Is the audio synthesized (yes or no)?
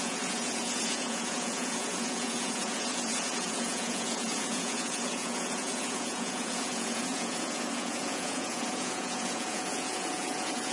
yes